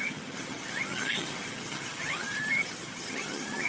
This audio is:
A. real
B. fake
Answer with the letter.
B